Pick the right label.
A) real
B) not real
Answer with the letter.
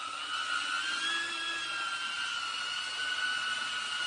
A